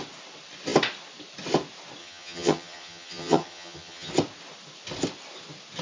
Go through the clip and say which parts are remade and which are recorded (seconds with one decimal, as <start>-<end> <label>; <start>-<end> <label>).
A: 0.0-2.0 recorded; 2.0-4.1 remade; 4.1-5.8 recorded

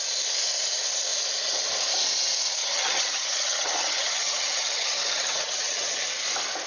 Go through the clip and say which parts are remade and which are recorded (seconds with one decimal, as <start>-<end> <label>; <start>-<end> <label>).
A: 0.0-2.6 recorded; 2.6-6.0 remade; 6.0-6.7 recorded